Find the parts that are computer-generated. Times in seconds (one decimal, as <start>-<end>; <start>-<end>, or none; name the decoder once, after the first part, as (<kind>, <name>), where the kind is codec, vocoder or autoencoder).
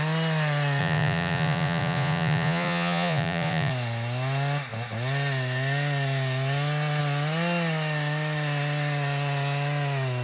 0.8-3.7 (vocoder, Vocos)